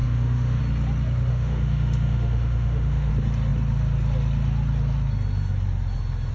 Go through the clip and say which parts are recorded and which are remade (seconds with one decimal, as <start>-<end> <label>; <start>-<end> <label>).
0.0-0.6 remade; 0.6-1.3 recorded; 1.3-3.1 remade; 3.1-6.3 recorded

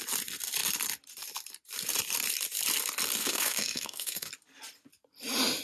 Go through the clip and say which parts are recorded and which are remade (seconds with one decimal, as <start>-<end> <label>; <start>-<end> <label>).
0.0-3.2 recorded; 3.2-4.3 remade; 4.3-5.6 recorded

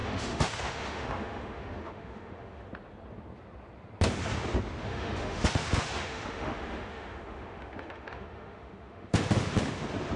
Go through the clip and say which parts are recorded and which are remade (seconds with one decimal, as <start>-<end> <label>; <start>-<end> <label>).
0.0-2.7 remade; 2.7-4.9 recorded; 4.9-9.5 remade; 9.5-10.2 recorded